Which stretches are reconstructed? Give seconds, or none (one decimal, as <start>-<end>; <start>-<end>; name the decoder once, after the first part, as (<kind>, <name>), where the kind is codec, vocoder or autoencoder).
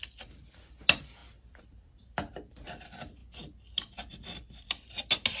1.2-1.9 (vocoder, BigVGAN v2)